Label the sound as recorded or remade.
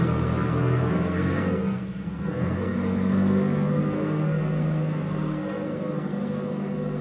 remade